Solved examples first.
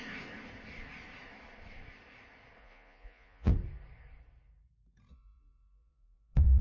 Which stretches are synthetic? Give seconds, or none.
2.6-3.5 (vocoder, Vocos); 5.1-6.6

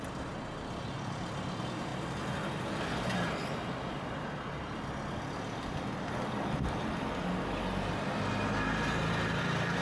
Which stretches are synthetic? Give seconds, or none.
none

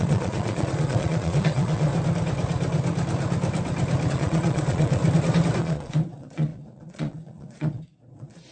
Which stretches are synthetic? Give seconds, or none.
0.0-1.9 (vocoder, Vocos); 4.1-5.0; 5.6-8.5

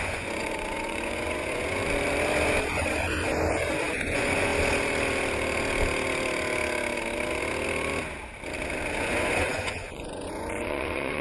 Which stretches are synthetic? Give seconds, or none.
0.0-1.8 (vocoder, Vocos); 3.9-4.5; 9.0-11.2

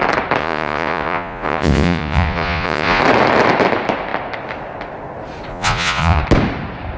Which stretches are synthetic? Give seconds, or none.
0.4-3.0 (vocoder, Vocos); 5.5-6.2